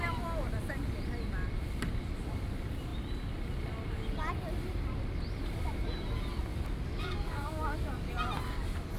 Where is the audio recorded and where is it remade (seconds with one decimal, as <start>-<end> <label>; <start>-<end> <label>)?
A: 0.0-6.5 recorded; 6.5-8.1 remade; 8.1-9.0 recorded